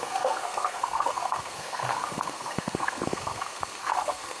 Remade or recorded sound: remade